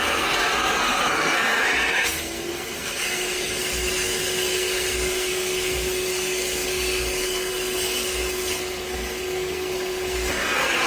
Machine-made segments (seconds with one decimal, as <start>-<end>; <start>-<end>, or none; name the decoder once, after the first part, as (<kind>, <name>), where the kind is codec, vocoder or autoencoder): 0.0-10.9 (codec, SNAC)